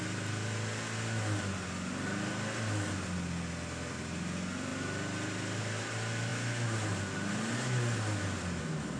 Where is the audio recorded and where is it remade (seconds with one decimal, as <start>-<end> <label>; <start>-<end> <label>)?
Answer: 0.0-9.0 recorded